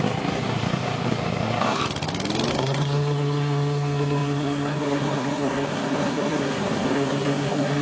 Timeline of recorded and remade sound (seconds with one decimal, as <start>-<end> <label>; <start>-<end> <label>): 0.0-1.8 remade; 1.8-2.5 recorded; 2.5-7.8 remade